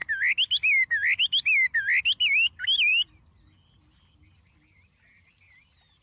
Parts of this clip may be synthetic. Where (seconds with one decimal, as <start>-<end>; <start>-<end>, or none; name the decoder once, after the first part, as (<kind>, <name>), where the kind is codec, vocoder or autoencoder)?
none